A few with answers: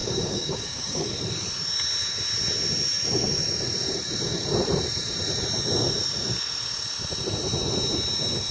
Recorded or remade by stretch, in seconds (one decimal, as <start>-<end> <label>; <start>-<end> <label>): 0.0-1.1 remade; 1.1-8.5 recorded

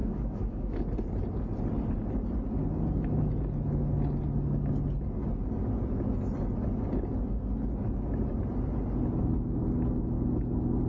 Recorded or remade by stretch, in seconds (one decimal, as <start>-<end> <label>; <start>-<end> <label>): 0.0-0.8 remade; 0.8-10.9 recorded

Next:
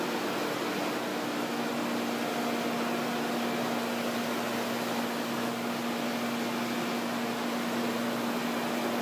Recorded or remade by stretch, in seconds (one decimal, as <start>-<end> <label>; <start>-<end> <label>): 0.0-1.1 recorded; 1.1-1.7 remade; 1.7-9.0 recorded